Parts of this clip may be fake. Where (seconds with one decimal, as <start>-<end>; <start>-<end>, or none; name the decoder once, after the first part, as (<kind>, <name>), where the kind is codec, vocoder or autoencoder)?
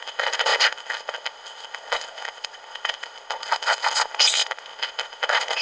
0.0-5.6 (codec, ZipCodec)